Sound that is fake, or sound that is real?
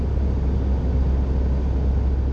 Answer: real